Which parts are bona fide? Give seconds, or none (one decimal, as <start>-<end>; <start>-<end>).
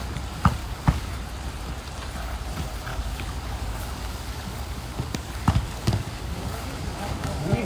0.0-0.6; 1.2-2.9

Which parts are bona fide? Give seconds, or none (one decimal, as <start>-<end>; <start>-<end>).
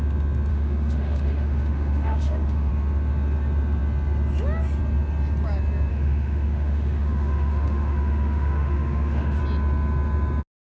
0.0-0.5; 2.7-5.9; 9.4-10.8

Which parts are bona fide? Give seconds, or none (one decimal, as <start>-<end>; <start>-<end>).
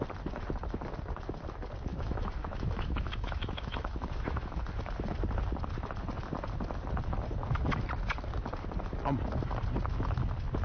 0.0-1.9; 4.5-10.6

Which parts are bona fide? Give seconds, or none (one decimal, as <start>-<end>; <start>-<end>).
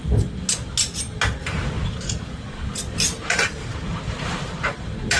0.0-2.9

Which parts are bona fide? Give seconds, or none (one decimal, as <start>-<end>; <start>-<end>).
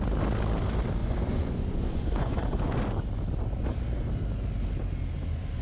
0.0-1.0; 2.8-5.6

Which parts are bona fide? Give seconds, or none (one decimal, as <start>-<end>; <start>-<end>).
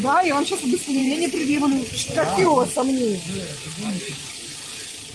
0.0-5.1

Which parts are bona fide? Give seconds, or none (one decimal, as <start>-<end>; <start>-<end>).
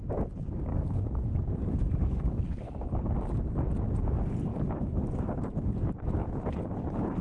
0.0-0.7; 3.1-4.5; 6.3-7.2